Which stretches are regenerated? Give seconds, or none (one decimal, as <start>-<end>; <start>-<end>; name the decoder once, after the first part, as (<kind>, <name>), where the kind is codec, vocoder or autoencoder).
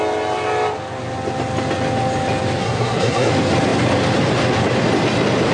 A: 2.6-3.3 (codec, SNAC)